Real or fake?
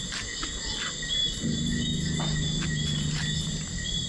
real